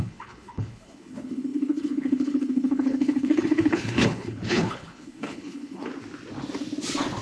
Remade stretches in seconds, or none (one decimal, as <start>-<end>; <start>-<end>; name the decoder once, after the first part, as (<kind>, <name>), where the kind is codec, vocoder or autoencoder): 0.0-5.9 (codec, HILCodec)

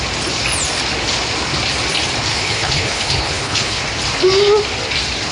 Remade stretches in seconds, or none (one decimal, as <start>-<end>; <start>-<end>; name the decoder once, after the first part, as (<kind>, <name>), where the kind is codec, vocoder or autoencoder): 2.3-3.8 (codec, HILCodec)

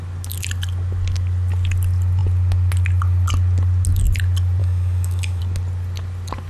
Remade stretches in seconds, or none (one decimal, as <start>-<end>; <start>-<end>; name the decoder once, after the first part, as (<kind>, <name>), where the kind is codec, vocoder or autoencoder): 4.6-5.4 (codec, DAC)

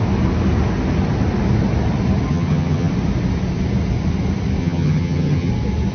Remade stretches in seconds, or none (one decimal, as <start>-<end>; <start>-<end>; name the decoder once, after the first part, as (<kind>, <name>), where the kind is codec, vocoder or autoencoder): 2.3-2.9 (vocoder, HiFi-GAN); 4.6-5.5

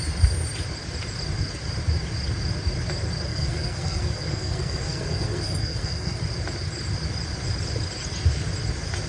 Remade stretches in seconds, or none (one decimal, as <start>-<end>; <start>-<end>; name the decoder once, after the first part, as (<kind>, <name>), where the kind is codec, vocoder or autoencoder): 3.3-6.2 (codec, SNAC)

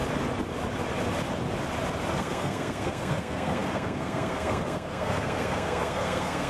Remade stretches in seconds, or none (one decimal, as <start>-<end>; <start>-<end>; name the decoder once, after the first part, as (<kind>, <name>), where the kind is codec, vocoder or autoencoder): 2.2-6.5 (codec, SNAC)